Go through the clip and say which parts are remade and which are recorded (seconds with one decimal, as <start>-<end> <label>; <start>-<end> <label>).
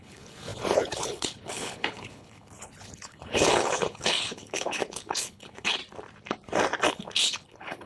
0.0-5.8 remade; 5.8-6.9 recorded; 6.9-7.9 remade